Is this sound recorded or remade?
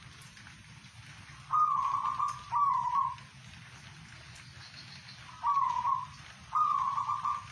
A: recorded